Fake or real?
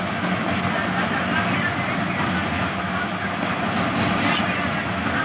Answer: real